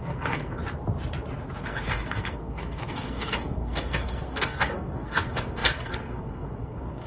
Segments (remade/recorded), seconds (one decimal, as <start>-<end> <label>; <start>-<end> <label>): 0.0-0.6 remade; 0.6-1.6 recorded; 1.6-7.1 remade

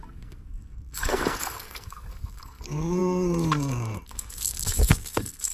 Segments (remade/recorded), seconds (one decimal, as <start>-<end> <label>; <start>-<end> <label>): 0.0-5.5 remade